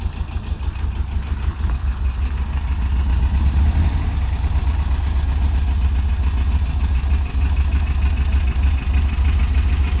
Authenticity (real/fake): real